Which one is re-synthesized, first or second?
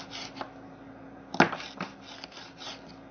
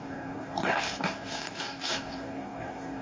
second